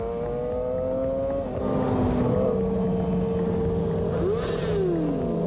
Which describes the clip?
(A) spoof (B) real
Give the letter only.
B